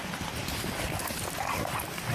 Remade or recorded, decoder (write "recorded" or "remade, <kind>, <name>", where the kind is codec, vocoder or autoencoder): recorded